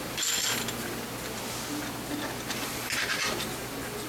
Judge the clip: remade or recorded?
recorded